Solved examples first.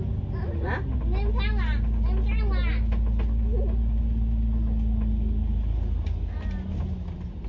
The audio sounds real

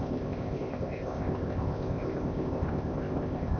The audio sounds fake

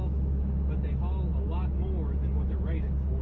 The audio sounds real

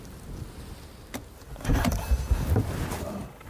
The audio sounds real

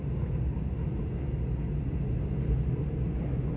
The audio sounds real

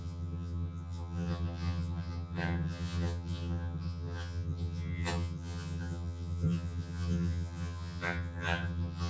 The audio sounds fake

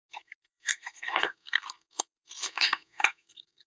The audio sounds fake